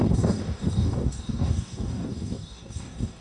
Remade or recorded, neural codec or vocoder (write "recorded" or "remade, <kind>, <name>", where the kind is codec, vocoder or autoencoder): remade, codec, DAC